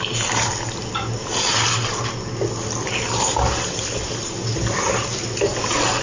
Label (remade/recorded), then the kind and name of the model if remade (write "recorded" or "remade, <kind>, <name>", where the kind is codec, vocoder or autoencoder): recorded